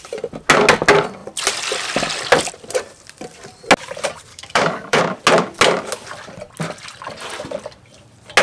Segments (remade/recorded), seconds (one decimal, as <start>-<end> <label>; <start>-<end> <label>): 0.0-4.3 recorded; 4.3-5.0 remade; 5.0-8.4 recorded

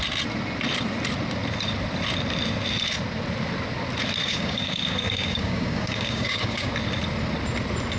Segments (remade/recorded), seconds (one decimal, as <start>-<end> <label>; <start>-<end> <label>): 0.0-4.2 recorded; 4.2-6.7 remade; 6.7-8.0 recorded

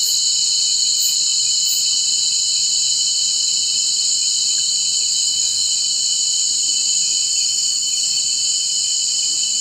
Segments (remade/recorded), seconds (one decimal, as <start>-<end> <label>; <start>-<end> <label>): 0.0-5.1 recorded; 5.1-5.7 remade; 5.7-7.3 recorded; 7.3-8.2 remade; 8.2-9.6 recorded

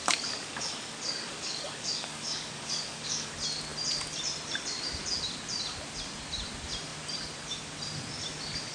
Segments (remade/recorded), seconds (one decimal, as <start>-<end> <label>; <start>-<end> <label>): 0.0-3.3 remade; 3.3-8.7 recorded

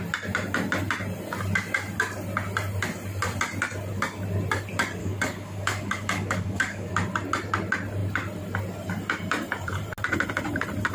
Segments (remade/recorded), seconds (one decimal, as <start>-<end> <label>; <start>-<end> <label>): 0.0-5.0 recorded; 5.0-6.9 remade; 6.9-10.9 recorded

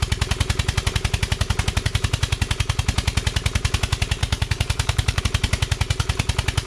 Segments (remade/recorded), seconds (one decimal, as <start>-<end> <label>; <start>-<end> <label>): 0.0-4.2 recorded; 4.2-5.2 remade; 5.2-6.7 recorded

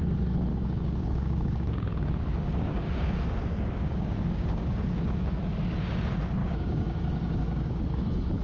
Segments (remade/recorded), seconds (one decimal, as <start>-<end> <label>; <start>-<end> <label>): 0.0-0.5 recorded; 0.5-5.4 remade; 5.4-6.4 recorded; 6.4-7.8 remade; 7.8-8.4 recorded